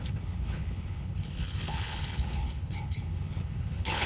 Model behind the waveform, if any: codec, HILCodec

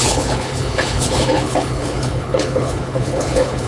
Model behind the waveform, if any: codec, HILCodec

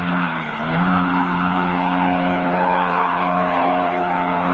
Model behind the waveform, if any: codec, HILCodec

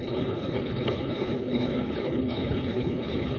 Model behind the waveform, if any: codec, HILCodec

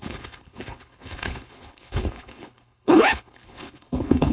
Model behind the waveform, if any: codec, HILCodec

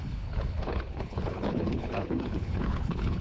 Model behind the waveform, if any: codec, HILCodec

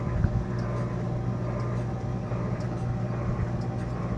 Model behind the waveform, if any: none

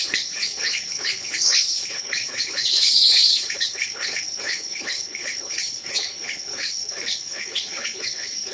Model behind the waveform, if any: codec, HILCodec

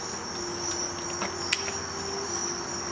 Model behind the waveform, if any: none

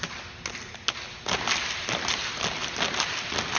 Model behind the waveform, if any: none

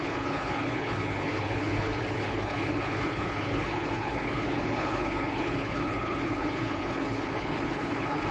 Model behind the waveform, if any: codec, HILCodec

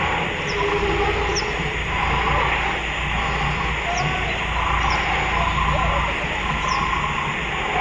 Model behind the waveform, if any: none